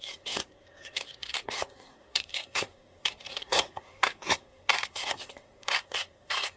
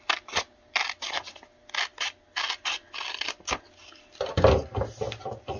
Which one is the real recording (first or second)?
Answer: second